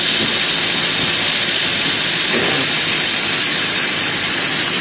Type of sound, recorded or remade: recorded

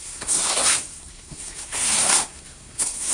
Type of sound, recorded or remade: remade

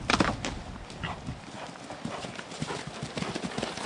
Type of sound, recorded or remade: recorded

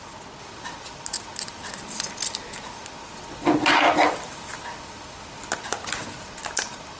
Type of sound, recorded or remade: recorded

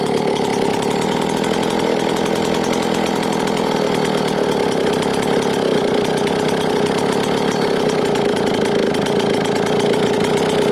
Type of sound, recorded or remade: recorded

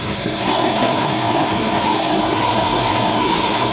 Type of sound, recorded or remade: remade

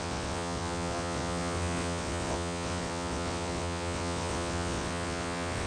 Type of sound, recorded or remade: remade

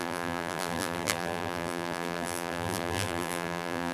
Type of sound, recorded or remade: remade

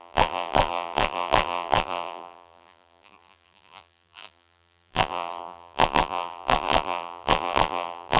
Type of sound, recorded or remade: remade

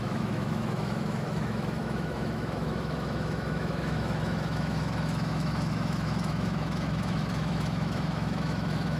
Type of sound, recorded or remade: remade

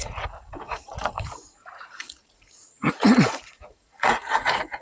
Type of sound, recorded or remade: remade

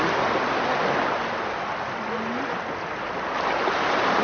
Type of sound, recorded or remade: recorded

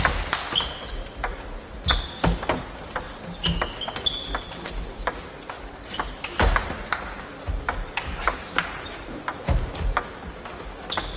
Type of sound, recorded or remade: recorded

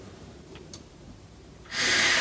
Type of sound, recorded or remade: remade